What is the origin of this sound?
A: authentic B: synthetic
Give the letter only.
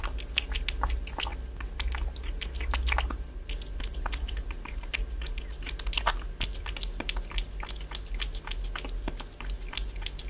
A